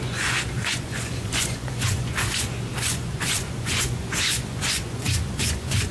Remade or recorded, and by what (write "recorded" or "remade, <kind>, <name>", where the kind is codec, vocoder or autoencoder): remade, vocoder, Vocos